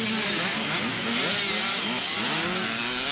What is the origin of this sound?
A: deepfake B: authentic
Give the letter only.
B